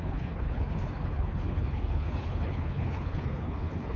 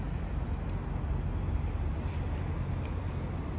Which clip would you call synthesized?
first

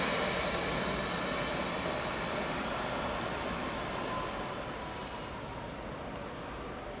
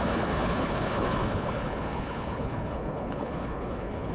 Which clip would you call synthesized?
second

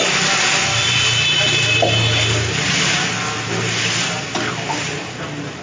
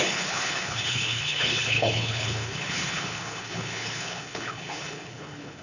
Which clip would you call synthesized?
second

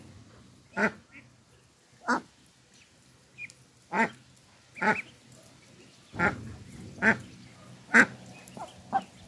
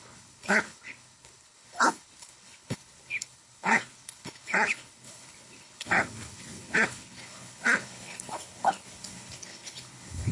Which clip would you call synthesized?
second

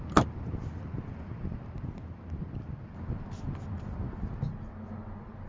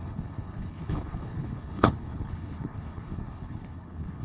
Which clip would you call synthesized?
second